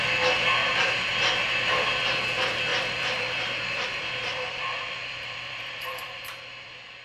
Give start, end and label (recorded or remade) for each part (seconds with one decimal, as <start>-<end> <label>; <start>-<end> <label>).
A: 0.0-0.6 recorded; 0.6-1.1 remade; 1.1-2.7 recorded; 2.7-7.0 remade